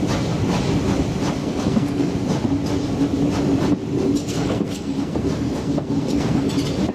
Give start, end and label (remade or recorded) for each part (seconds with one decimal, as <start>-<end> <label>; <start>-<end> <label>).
0.0-1.4 recorded; 1.4-2.1 remade; 2.1-4.2 recorded; 4.2-6.5 remade; 6.5-6.9 recorded